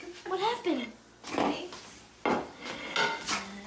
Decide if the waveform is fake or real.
real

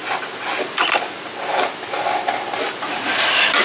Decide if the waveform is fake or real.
real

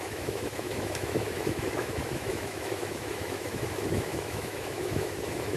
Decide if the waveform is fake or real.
fake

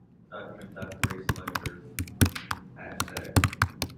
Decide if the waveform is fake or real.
real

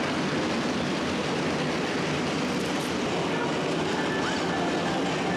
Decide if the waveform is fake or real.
real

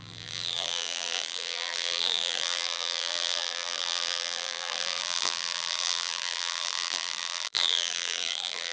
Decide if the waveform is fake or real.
fake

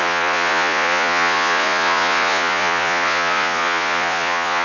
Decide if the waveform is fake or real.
fake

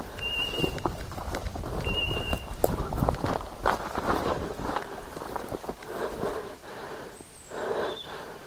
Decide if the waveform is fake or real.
fake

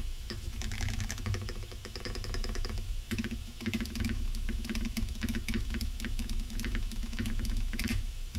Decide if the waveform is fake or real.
fake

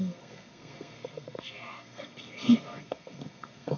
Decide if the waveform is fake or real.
fake